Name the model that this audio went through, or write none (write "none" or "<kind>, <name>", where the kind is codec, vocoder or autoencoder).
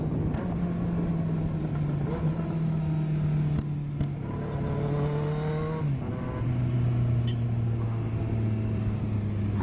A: none